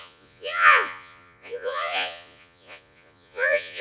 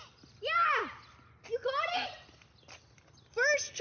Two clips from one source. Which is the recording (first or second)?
second